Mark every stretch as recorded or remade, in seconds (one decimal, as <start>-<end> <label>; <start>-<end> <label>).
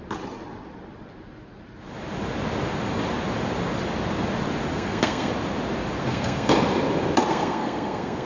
0.0-4.7 recorded; 4.7-5.3 remade; 5.3-6.0 recorded; 6.0-6.5 remade; 6.5-7.3 recorded; 7.3-8.3 remade